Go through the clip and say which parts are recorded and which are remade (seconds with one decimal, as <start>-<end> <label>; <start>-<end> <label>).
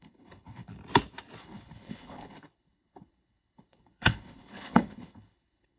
0.0-0.7 remade; 0.7-1.4 recorded; 1.4-5.8 remade